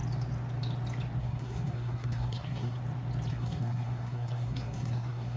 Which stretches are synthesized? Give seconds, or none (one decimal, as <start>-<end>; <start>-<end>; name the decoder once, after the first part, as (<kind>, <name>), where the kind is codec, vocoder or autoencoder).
1.2-2.8 (codec, SNAC); 3.3-5.4